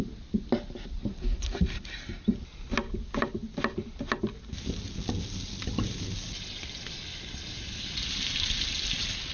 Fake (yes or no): no